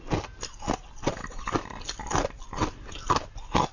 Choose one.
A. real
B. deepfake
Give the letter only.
A